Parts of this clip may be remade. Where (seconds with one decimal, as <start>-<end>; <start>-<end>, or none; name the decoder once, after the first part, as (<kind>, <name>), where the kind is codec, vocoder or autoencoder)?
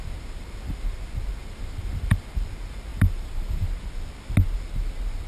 2.9-3.6 (vocoder, BigVGAN v2)